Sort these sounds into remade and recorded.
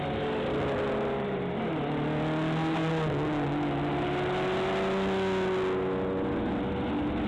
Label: recorded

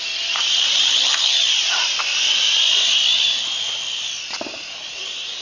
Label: recorded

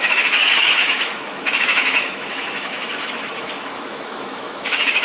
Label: remade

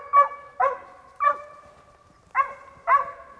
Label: recorded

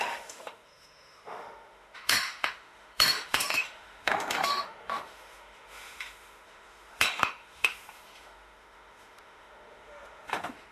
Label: remade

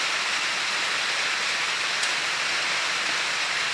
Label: remade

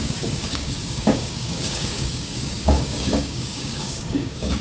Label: remade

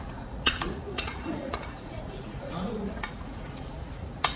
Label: remade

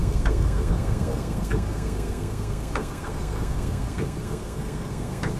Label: remade